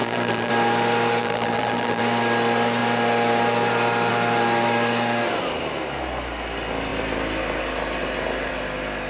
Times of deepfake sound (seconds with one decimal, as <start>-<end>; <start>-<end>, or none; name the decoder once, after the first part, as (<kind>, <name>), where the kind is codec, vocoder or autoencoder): 0.0-0.5 (vocoder, BigVGAN v2); 1.2-2.0